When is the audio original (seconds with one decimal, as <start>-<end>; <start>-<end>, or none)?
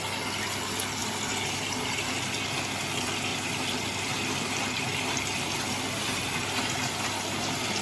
0.0-3.3; 6.6-7.8